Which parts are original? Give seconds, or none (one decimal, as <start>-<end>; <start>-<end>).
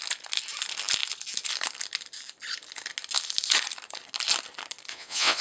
0.0-4.9